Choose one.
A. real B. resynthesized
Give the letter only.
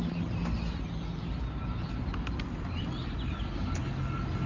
A